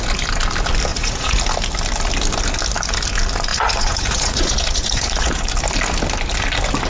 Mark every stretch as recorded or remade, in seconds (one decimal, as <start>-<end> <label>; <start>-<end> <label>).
0.0-0.9 recorded; 0.9-1.4 remade; 1.4-3.5 recorded; 3.5-5.5 remade; 5.5-6.9 recorded